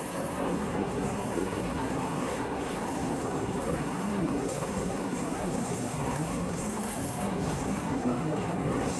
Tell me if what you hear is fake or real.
fake